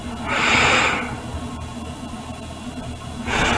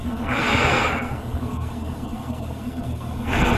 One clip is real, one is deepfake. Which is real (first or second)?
first